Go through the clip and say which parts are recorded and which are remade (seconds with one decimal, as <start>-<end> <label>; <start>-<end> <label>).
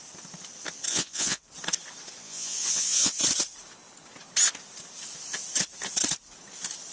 0.0-0.9 recorded; 0.9-1.4 remade; 1.4-2.2 recorded; 2.2-3.2 remade; 3.2-6.9 recorded